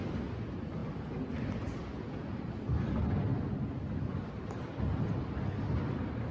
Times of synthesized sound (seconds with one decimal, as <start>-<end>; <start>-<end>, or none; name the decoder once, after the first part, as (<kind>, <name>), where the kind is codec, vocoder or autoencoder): none